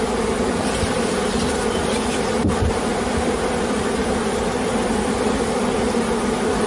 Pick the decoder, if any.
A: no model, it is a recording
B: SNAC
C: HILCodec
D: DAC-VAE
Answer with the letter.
A